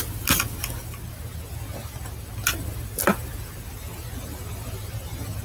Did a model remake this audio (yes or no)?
no